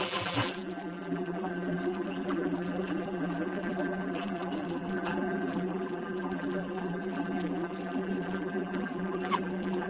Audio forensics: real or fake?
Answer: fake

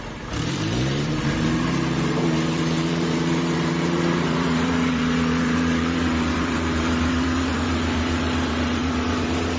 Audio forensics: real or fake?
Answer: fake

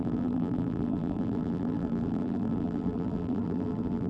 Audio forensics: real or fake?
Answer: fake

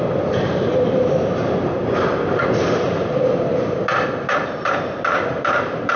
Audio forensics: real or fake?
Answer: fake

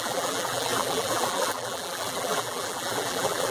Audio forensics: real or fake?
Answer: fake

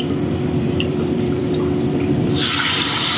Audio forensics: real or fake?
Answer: fake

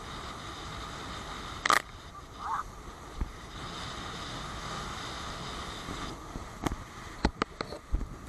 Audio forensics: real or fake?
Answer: real